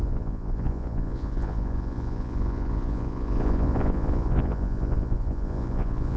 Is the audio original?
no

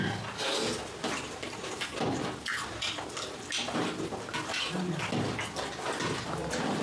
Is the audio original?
yes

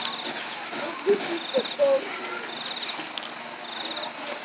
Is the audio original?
yes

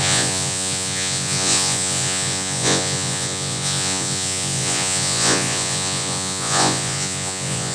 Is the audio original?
no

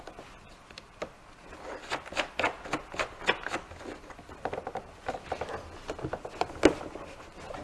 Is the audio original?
yes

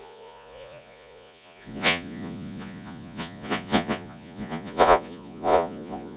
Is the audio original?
no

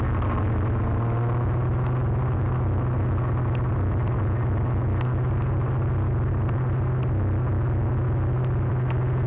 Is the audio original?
yes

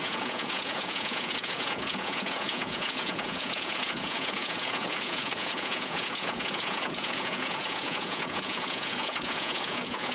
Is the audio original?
no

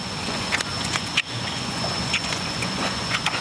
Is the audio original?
no